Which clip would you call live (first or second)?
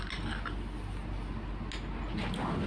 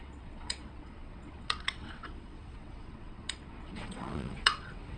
first